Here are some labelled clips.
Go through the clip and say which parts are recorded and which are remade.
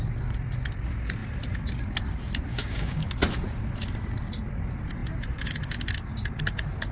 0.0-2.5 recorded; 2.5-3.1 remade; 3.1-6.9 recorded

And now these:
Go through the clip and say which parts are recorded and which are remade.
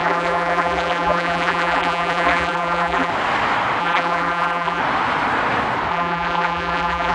0.0-3.1 remade; 3.1-3.8 recorded; 3.8-4.8 remade; 4.8-5.9 recorded; 5.9-7.1 remade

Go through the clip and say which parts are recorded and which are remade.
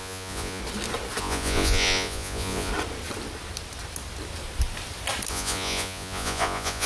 0.0-0.6 remade; 0.6-1.2 recorded; 1.2-2.7 remade; 2.7-5.3 recorded; 5.3-6.9 remade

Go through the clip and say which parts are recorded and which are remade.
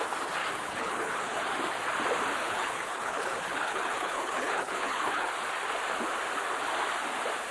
0.0-0.4 recorded; 0.4-1.4 remade; 1.4-2.4 recorded; 2.4-5.3 remade; 5.3-7.5 recorded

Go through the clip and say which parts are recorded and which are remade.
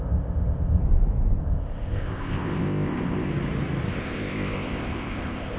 0.0-0.8 remade; 0.8-1.4 recorded; 1.4-3.3 remade; 3.3-3.9 recorded; 3.9-5.6 remade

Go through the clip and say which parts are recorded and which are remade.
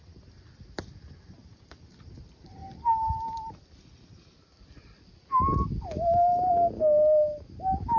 0.0-8.0 recorded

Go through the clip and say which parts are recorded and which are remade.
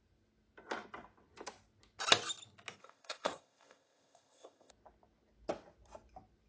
0.0-2.8 recorded; 2.8-4.7 remade; 4.7-6.5 recorded